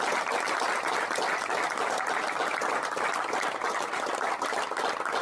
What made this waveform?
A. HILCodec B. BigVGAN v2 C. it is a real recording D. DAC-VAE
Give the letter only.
C